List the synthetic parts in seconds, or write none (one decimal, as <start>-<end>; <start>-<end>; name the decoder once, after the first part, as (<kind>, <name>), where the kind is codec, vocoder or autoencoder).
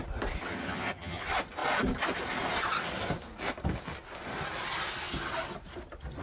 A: 0.5-1.2 (vocoder, HiFi-GAN)